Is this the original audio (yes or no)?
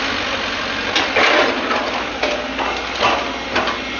yes